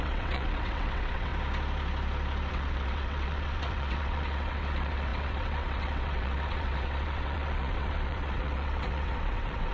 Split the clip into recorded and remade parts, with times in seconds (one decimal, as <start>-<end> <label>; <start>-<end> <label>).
0.0-1.3 remade; 1.3-2.5 recorded; 2.5-9.7 remade